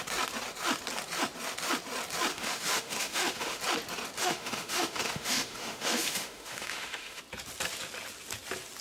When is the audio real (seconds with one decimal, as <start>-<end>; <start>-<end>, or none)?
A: 0.0-2.3; 3.6-4.2; 7.2-8.8